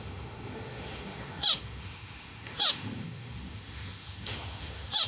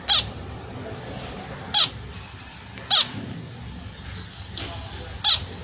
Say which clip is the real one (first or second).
second